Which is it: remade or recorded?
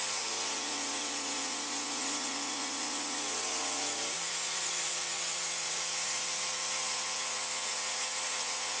remade